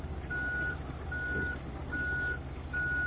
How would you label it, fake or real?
real